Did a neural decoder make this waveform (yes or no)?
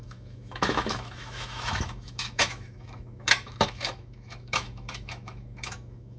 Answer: yes